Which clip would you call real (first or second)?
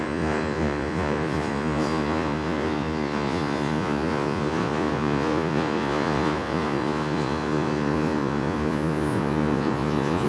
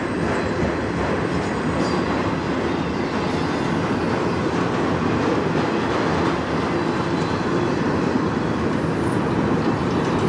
second